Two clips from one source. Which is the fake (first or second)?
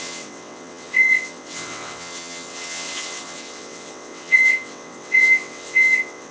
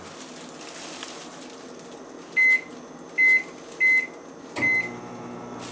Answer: first